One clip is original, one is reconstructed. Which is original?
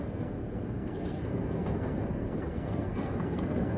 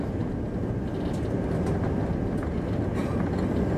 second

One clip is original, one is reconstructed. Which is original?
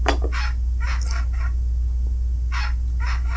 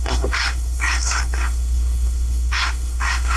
first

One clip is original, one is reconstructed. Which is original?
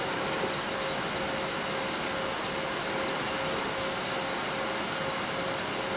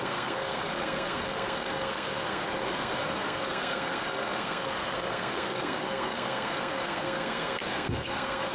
first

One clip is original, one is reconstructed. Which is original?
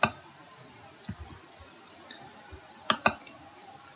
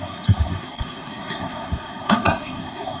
first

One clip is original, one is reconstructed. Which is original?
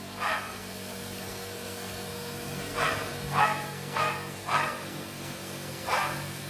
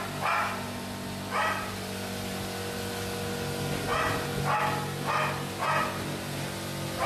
second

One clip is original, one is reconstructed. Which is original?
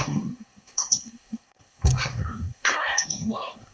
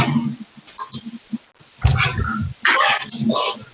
second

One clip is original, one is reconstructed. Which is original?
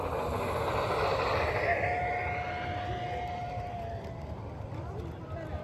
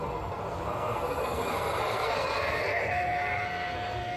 first